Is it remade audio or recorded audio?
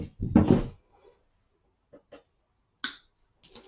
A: recorded